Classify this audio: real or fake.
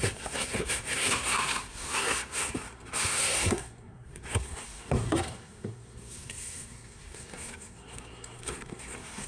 fake